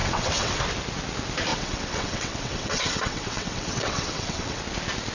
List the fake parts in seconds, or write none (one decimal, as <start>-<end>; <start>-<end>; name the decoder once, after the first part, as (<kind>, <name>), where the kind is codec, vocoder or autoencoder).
0.0-0.6 (vocoder, WaveNeXt); 1.5-4.6